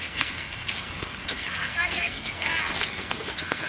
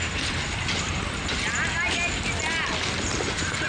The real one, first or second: second